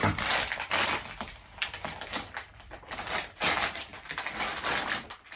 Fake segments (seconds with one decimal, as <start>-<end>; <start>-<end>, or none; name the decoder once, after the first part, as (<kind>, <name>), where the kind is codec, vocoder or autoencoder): 2.0-3.9 (vocoder, BigVGAN v2); 4.6-5.4